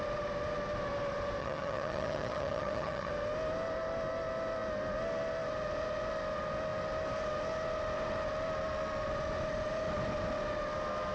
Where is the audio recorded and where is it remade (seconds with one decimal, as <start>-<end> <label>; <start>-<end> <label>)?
0.0-1.4 recorded; 1.4-3.1 remade; 3.1-11.1 recorded

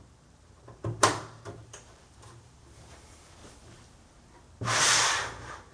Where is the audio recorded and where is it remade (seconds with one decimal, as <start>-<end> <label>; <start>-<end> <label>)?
0.0-3.4 remade; 3.4-4.8 recorded; 4.8-5.7 remade